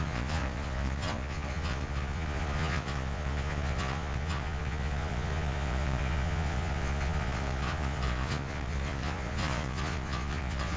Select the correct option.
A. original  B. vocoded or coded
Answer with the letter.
B